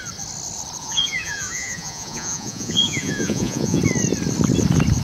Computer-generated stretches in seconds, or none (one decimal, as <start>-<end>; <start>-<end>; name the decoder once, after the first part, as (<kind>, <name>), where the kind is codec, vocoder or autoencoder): 0.8-3.8 (vocoder, Vocos)

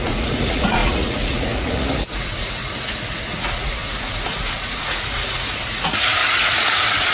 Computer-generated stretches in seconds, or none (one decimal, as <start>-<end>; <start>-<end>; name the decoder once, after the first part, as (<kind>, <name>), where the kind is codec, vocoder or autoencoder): 0.0-7.1 (vocoder, Vocos)

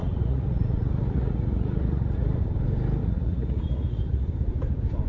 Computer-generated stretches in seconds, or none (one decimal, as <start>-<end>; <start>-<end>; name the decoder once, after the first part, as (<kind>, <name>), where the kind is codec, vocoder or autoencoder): 0.0-2.4 (vocoder, Vocos); 3.0-4.3

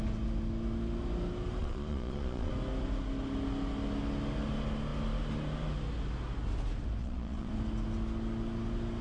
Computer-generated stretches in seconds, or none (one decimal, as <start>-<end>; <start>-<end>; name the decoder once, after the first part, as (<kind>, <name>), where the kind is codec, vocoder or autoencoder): 1.6-2.5 (vocoder, Vocos); 7.0-7.5

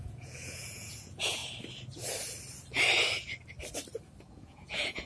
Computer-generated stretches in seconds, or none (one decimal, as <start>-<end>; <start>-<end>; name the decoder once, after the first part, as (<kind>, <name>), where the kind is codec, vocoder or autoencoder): 0.0-1.4 (vocoder, Vocos); 4.2-5.1

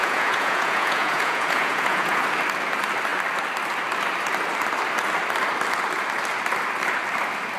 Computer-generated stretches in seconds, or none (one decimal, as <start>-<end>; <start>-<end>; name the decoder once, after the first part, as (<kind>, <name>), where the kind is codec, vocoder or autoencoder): 0.0-2.2 (vocoder, Vocos)

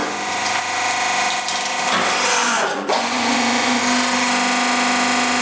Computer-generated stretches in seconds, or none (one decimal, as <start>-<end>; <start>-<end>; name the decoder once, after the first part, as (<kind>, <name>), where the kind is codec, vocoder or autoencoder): 0.0-0.6 (vocoder, Vocos); 2.4-3.8